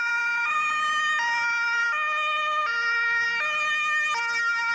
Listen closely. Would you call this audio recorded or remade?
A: recorded